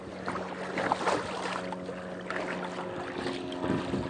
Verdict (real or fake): real